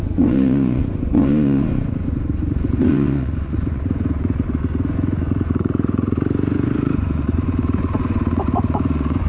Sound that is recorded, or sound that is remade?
remade